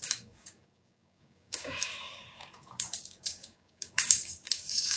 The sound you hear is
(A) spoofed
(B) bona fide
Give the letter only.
A